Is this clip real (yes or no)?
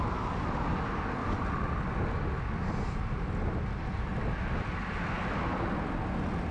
yes